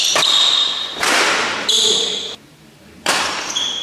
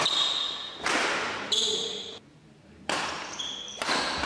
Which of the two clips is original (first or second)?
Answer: second